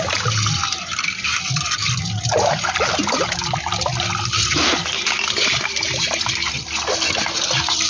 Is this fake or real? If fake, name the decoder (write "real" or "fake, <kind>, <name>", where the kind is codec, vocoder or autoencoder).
real